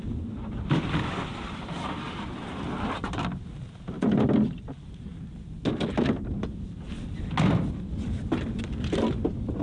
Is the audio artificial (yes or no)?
no